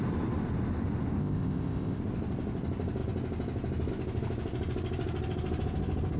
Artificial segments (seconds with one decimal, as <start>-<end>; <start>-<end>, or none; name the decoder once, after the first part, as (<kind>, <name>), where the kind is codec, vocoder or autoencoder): 1.2-2.0 (codec, ZipCodec)